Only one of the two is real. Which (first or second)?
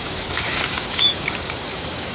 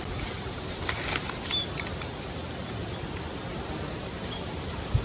second